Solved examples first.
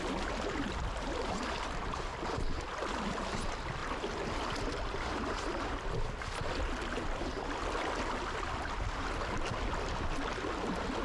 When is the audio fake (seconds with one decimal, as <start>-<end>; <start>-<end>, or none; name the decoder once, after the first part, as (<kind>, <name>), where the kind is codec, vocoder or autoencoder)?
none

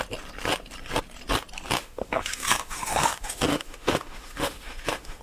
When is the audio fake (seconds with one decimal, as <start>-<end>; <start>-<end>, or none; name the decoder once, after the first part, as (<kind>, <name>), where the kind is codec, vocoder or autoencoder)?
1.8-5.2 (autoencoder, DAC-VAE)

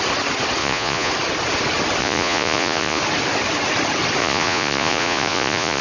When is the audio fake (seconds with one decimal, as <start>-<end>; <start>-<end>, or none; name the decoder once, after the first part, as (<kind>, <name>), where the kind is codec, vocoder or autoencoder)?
0.6-1.1 (vocoder, Vocos); 2.0-3.0; 4.2-5.8